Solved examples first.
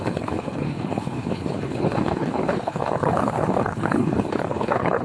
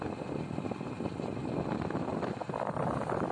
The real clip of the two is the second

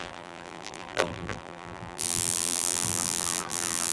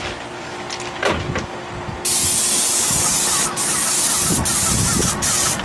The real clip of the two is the second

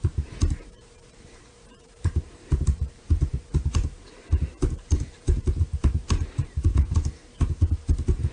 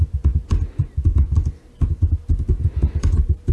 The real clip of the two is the second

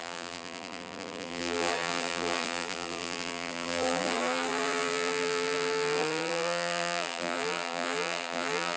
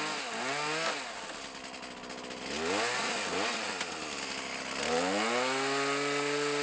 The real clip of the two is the second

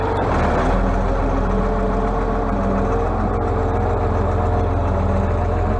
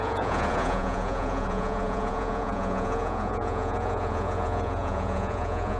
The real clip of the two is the first